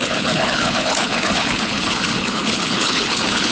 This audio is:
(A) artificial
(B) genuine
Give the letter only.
A